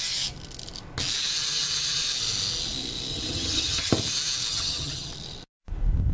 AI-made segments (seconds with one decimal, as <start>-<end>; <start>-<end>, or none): 3.1-3.9; 4.5-5.1